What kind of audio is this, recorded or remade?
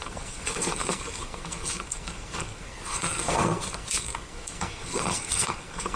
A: remade